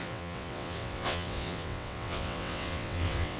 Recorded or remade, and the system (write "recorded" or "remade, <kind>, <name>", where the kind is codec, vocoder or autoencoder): remade, vocoder, WaveNeXt